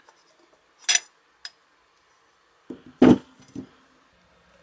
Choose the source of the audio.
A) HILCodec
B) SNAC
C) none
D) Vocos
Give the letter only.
C